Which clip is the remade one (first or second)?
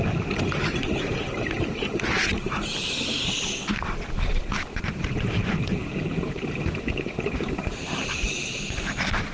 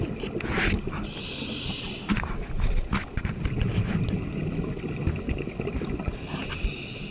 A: first